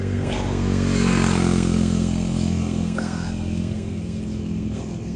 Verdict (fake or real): fake